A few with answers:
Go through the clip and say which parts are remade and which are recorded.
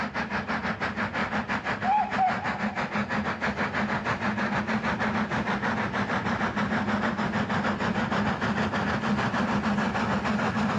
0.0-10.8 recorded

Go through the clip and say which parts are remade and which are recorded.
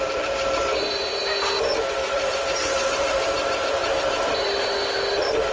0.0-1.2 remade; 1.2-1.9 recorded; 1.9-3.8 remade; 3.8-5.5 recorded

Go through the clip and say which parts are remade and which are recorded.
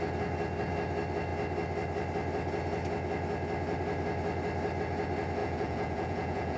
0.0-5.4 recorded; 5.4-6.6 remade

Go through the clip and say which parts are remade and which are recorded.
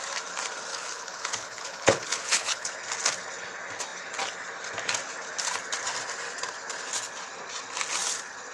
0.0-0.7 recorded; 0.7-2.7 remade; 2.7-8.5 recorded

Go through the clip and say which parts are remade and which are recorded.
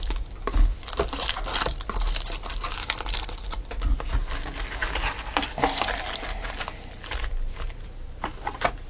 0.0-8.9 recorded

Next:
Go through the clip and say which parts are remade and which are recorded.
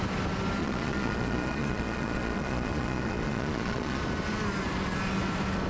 0.0-0.6 recorded; 0.6-4.0 remade; 4.0-5.7 recorded